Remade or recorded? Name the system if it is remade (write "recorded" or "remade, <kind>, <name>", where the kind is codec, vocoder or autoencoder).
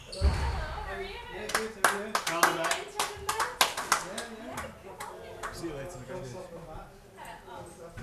recorded